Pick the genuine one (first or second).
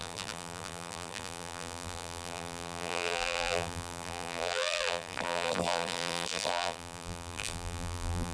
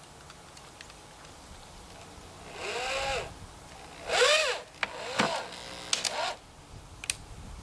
second